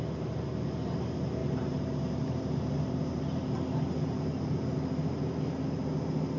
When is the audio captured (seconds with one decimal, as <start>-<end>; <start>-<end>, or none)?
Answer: 0.0-1.4; 5.2-6.4